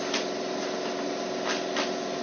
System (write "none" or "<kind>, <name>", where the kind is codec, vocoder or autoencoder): none